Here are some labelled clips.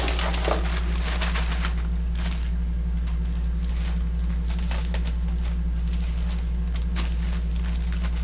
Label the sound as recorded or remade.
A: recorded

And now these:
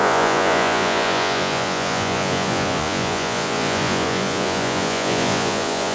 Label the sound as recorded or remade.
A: remade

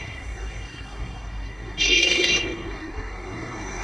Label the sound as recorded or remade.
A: remade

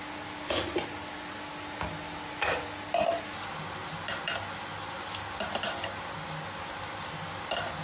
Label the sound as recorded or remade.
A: recorded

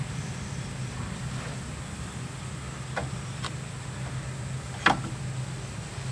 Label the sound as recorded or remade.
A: remade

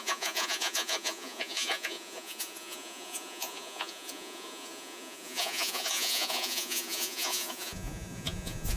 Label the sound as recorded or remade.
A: remade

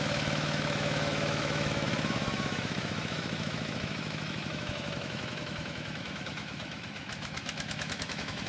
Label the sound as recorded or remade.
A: remade